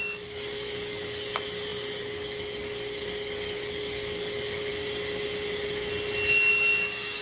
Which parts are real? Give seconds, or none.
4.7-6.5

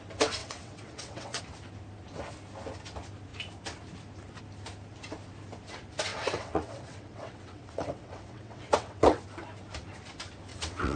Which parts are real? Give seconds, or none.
0.0-0.4; 1.4-6.1; 9.2-10.5

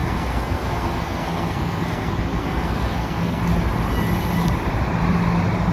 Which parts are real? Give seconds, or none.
3.4-5.7